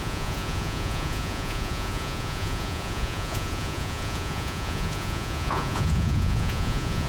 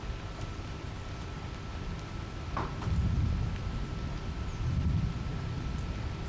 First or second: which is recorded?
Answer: second